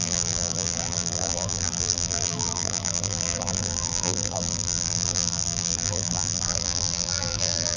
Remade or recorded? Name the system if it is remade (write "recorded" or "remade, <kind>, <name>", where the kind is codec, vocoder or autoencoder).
remade, vocoder, BigVGAN v2